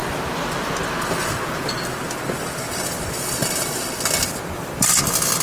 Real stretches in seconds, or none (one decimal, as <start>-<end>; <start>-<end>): 0.0-4.2; 4.9-5.4